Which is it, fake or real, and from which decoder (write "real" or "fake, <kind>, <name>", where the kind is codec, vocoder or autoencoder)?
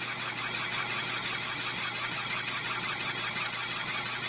real